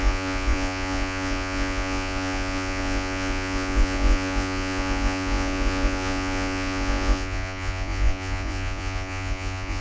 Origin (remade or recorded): remade